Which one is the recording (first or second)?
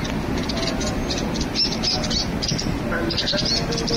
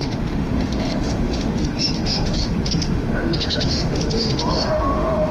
first